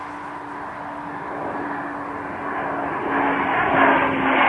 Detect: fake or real real